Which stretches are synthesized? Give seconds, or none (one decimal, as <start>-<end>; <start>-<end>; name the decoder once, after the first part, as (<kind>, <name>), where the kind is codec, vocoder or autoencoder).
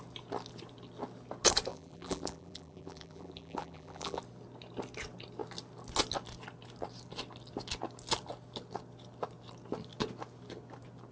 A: 1.7-4.2 (vocoder, BigVGAN v2)